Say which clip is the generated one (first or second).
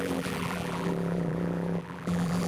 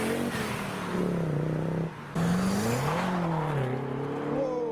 first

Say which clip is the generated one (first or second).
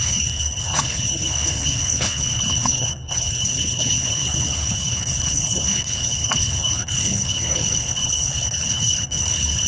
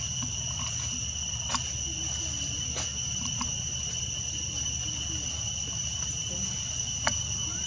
first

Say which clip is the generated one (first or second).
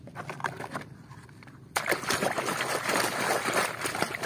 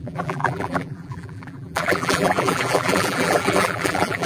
second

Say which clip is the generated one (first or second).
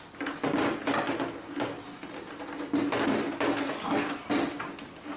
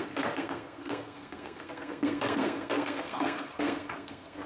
second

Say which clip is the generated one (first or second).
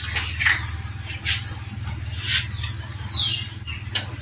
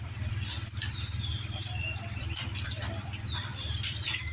second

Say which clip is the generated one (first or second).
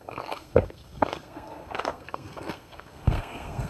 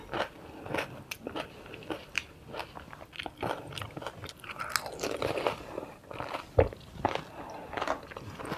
first